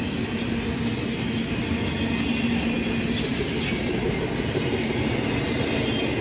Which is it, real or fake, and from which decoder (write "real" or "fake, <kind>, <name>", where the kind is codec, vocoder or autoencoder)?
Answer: real